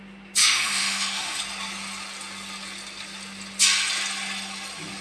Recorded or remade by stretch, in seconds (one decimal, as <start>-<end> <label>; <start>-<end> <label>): 0.0-0.4 recorded; 0.4-1.4 remade; 1.4-5.0 recorded